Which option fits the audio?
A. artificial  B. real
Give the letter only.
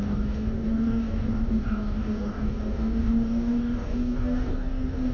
A